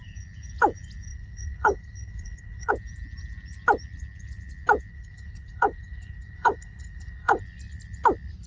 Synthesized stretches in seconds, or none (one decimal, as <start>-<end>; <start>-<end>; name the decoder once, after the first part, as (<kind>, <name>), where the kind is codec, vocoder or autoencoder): 1.1-2.7 (codec, HILCodec); 4.9-7.4